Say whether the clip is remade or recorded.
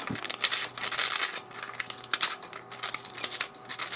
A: recorded